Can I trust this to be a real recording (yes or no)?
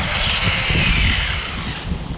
yes